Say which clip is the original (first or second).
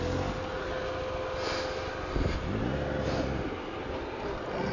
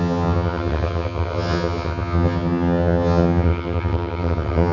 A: first